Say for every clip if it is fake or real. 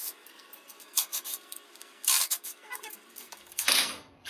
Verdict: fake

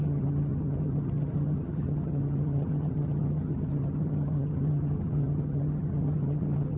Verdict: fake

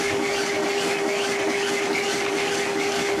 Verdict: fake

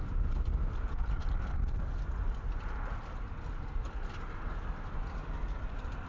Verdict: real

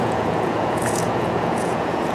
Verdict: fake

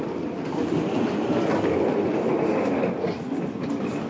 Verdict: real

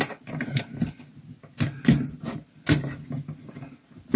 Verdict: real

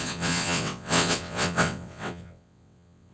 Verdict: fake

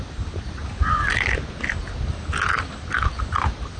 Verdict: real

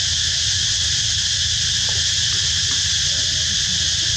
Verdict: real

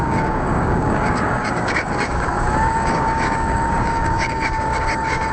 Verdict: fake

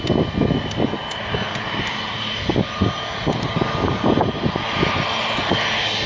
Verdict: real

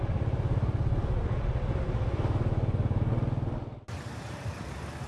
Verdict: real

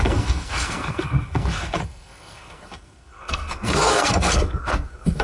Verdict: fake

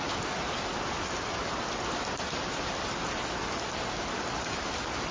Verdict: real